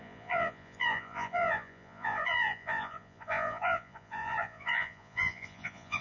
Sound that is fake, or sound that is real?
fake